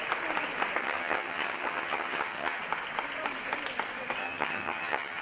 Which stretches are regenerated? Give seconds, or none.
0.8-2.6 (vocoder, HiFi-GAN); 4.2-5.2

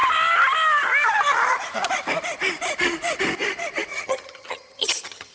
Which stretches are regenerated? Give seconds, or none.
3.9-5.3 (vocoder, HiFi-GAN)

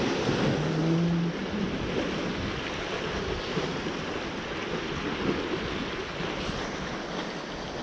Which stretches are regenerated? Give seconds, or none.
none

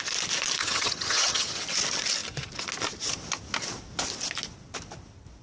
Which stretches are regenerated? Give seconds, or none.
0.6-1.6 (vocoder, HiFi-GAN)

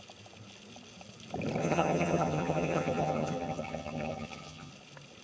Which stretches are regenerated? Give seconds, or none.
1.6-4.7 (vocoder, HiFi-GAN)

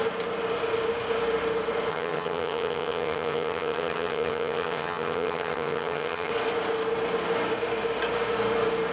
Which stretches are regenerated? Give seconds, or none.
1.9-6.3 (vocoder, HiFi-GAN)

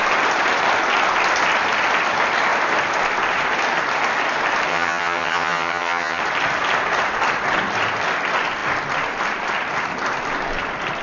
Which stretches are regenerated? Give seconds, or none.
4.7-6.2 (vocoder, HiFi-GAN)

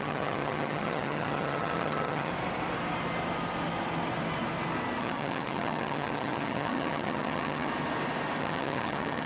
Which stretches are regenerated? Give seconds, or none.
0.0-2.3 (vocoder, HiFi-GAN); 5.0-7.7; 8.4-9.3